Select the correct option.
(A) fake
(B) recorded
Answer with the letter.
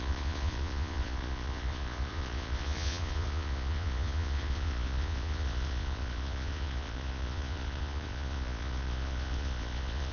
A